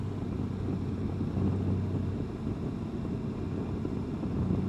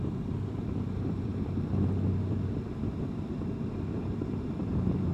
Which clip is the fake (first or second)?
second